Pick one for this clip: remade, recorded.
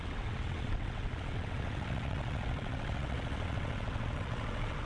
remade